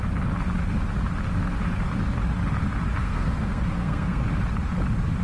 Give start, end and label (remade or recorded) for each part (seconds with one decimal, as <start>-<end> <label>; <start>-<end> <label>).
0.0-3.0 recorded; 3.0-4.2 remade; 4.2-5.2 recorded